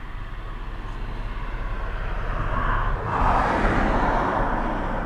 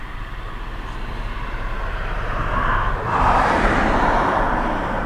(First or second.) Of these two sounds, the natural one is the first